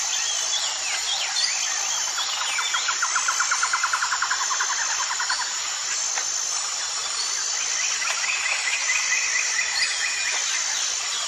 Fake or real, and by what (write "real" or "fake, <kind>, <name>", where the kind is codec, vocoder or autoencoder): real